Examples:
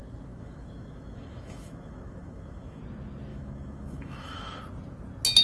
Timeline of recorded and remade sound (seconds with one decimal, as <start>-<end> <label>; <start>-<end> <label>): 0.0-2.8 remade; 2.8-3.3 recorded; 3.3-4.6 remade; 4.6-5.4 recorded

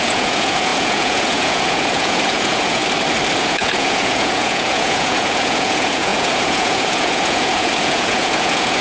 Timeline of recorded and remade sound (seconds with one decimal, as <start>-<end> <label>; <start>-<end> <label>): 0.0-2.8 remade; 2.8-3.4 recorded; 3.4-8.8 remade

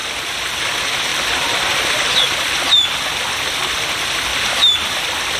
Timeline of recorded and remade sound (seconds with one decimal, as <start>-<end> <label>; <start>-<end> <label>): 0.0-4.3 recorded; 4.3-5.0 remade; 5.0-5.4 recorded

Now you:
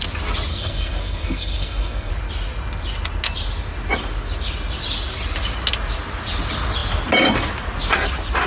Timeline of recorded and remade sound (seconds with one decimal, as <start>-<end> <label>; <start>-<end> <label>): 0.0-0.5 recorded; 0.5-2.1 remade; 2.1-8.5 recorded

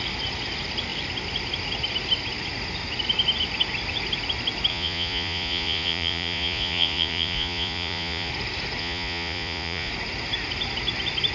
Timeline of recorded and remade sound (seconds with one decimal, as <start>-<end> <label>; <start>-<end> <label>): 0.0-4.7 recorded; 4.7-8.3 remade; 8.3-8.8 recorded; 8.8-9.9 remade; 9.9-11.3 recorded

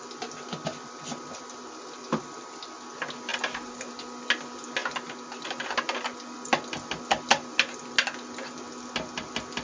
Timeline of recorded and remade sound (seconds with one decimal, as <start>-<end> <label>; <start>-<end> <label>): 0.0-3.3 recorded; 3.3-3.9 remade; 3.9-9.6 recorded

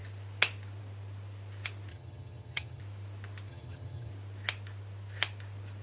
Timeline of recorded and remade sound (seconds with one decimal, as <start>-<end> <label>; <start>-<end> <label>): 0.0-1.9 recorded; 1.9-2.8 remade; 2.8-3.5 recorded; 3.5-4.1 remade; 4.1-5.8 recorded